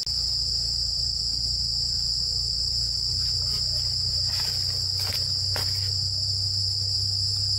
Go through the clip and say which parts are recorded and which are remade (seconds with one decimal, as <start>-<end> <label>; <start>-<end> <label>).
0.0-7.6 recorded